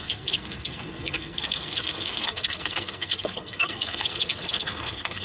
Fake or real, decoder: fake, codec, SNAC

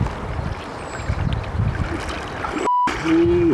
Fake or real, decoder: real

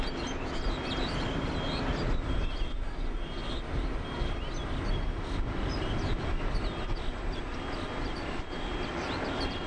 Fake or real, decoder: real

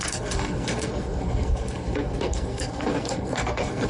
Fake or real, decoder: fake, codec, SNAC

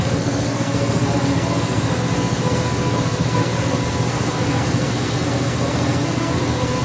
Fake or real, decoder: fake, codec, SNAC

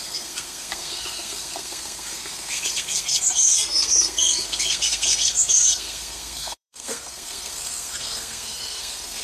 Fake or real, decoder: fake, codec, SNAC